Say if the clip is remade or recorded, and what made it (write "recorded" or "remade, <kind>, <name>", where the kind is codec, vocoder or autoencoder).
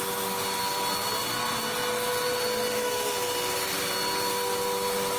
recorded